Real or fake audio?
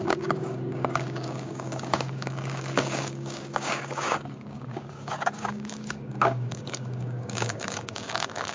fake